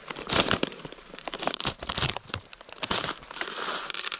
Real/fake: fake